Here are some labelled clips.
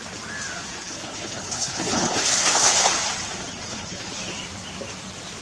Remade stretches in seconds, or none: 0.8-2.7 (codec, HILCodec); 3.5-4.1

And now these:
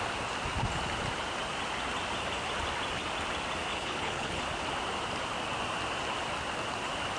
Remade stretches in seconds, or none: 3.7-4.4 (codec, HILCodec)

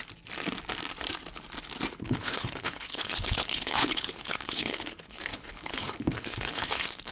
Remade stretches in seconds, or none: 2.0-7.1 (codec, HILCodec)

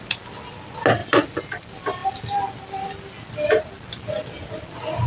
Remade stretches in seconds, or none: none